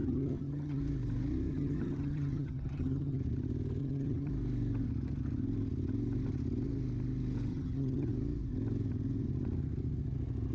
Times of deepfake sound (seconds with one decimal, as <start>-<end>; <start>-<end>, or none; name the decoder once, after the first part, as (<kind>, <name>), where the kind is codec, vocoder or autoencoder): 0.0-0.8 (vocoder, HiFi-GAN); 1.5-3.2; 3.8-4.3; 7.5-8.1